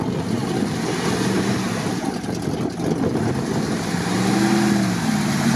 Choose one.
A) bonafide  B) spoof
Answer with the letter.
A